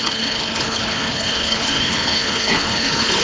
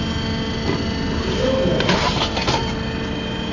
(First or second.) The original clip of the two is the second